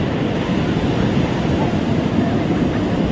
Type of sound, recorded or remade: recorded